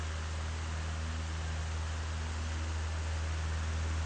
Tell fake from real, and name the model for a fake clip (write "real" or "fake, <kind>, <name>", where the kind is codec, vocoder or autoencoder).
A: real